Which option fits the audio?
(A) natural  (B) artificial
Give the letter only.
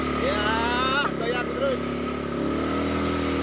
A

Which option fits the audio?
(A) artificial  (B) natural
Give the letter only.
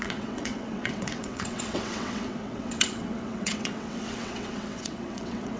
A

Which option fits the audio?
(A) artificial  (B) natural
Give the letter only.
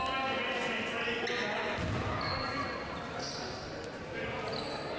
B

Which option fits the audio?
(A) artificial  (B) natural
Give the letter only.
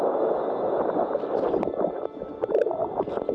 B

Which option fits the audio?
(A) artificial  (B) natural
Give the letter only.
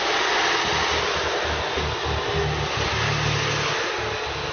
B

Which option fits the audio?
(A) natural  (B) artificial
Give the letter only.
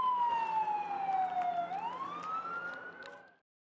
A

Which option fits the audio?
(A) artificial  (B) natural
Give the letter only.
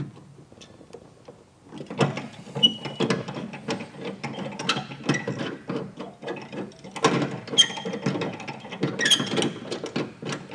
B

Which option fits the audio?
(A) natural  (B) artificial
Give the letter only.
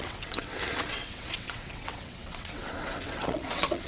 B